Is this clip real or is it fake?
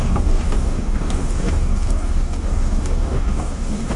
fake